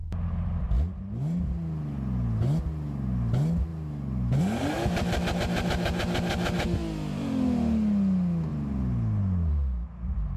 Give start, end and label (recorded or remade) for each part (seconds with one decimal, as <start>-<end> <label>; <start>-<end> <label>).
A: 0.0-0.6 remade; 0.6-10.4 recorded